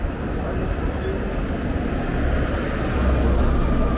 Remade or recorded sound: recorded